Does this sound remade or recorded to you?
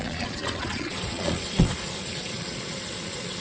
remade